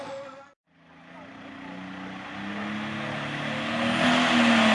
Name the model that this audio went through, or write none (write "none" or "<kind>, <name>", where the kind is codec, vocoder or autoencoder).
none